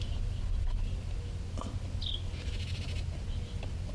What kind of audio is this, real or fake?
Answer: real